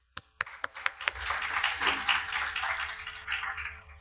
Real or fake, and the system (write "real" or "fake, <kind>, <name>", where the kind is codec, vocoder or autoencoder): real